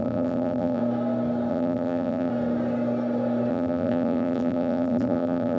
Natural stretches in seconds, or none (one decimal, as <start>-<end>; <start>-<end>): 0.8-1.5; 2.3-3.5